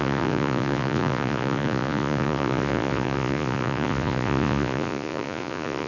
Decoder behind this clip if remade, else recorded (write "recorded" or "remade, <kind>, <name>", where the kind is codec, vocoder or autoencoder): remade, vocoder, Vocos